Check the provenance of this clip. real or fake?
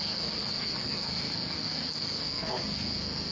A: fake